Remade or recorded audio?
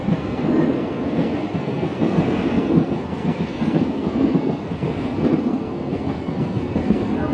remade